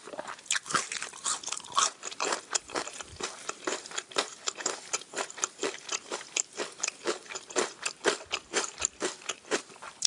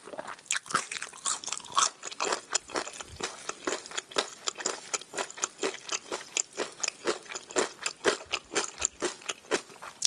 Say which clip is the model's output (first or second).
first